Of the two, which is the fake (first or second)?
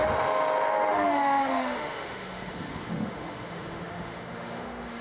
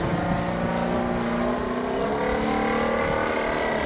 first